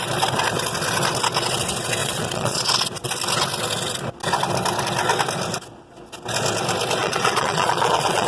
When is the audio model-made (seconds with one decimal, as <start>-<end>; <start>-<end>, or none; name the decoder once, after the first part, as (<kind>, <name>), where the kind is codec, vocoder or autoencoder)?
2.0-2.7 (vocoder, Vocos); 7.0-8.3